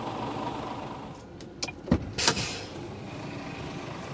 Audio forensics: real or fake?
real